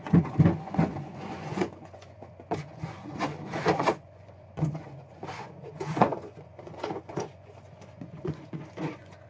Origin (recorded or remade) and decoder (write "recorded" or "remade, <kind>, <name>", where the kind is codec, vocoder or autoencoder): remade, vocoder, Vocos